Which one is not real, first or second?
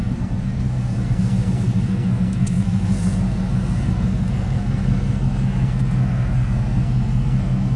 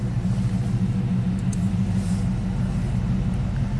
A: first